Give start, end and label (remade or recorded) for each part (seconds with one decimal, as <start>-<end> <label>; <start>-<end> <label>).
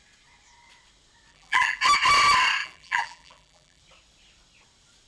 0.0-1.3 recorded; 1.3-1.8 remade; 1.8-2.6 recorded; 2.6-3.8 remade; 3.8-5.1 recorded